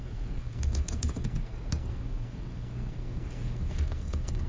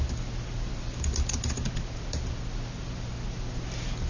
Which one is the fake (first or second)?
first